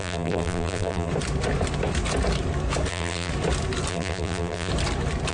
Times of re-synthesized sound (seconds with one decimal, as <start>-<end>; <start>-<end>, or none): 0.0-1.1; 2.9-3.3; 3.9-4.7